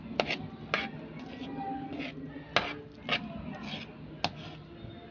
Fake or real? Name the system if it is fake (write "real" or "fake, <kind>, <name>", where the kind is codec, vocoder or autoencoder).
real